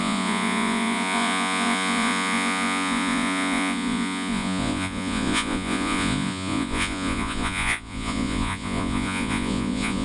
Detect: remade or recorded remade